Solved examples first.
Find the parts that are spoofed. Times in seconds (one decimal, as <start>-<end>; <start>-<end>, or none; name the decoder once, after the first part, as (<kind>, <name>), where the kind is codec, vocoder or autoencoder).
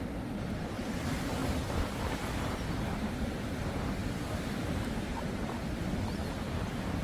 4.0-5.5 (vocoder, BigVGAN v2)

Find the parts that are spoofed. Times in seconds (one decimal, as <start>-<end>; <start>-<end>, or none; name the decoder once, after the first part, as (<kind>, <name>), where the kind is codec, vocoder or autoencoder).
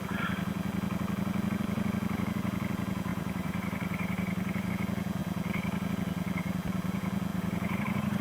3.1-4.7 (vocoder, BigVGAN v2); 7.3-8.2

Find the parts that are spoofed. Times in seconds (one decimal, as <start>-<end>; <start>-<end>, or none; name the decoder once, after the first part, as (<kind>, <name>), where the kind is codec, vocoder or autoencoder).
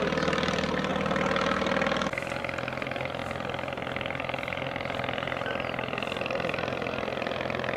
none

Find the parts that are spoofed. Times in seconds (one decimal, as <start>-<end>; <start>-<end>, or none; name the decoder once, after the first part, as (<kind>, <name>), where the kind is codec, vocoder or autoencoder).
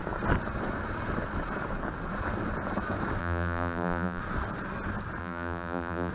3.2-4.2 (vocoder, BigVGAN v2); 5.2-6.1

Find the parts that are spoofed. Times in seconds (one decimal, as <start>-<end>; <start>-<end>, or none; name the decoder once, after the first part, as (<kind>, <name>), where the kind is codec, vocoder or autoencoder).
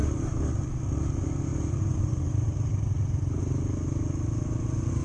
0.0-0.5 (vocoder, BigVGAN v2); 1.5-3.4